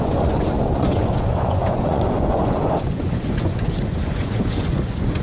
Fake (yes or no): yes